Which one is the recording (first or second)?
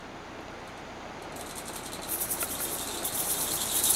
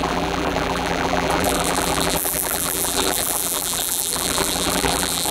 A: first